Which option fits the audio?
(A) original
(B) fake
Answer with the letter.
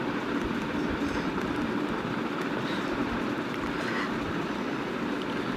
A